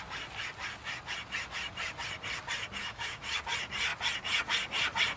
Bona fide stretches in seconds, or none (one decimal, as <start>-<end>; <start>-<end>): 0.0-2.8; 3.4-5.2